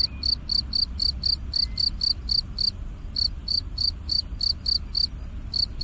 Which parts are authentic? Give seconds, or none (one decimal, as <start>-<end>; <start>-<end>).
0.0-3.4; 4.3-5.8